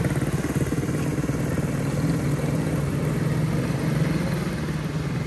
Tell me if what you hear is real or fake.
real